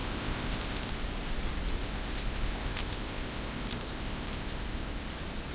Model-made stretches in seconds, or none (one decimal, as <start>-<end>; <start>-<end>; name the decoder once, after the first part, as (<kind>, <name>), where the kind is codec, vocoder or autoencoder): 0.0-0.9 (codec, ZipCodec); 1.8-5.1